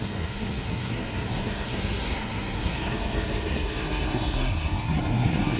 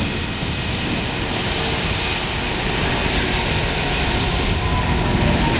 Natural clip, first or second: second